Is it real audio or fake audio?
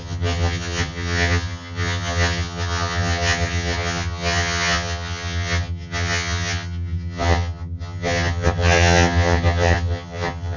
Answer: fake